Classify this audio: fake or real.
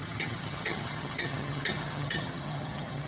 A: fake